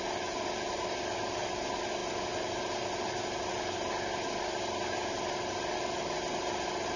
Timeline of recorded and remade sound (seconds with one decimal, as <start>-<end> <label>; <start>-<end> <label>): 0.0-7.0 recorded